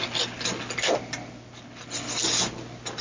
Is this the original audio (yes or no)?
yes